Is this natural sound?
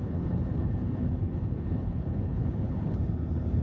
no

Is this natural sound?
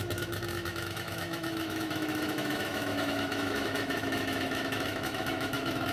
no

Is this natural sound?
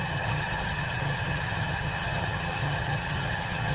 no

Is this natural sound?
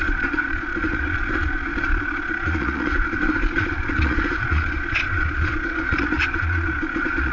no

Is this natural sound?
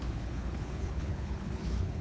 no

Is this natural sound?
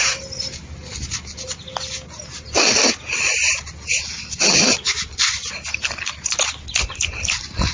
yes